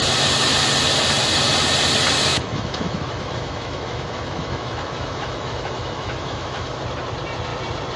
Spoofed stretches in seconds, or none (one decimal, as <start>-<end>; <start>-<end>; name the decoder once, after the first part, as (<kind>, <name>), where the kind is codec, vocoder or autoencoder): 2.3-6.8 (autoencoder, DAC-VAE)